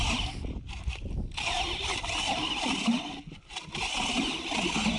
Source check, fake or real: real